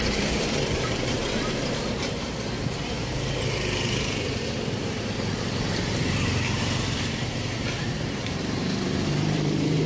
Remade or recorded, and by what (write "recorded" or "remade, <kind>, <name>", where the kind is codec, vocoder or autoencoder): remade, vocoder, BigVGAN v2